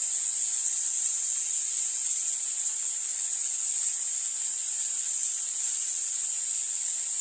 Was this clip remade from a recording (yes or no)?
no